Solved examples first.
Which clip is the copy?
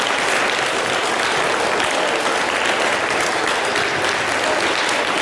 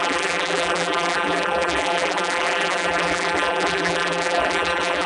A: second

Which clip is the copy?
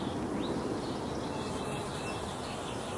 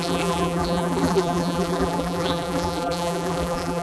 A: second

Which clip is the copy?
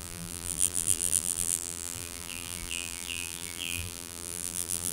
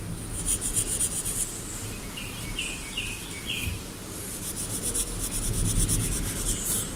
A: first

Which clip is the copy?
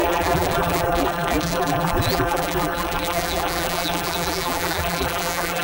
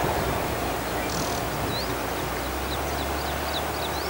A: first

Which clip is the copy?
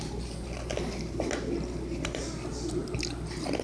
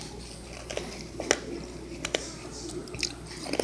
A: first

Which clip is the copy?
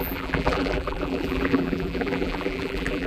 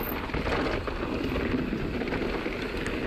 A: first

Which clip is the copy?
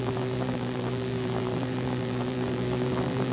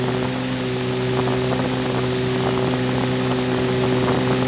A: first